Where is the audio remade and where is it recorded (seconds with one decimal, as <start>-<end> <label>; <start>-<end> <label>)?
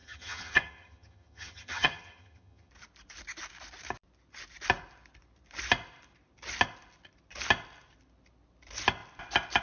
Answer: 0.0-2.7 remade; 2.7-9.6 recorded